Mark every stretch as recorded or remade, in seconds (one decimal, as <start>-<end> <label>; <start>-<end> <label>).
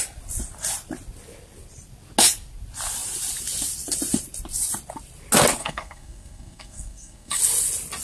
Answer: 0.0-5.6 recorded; 5.6-7.4 remade; 7.4-8.0 recorded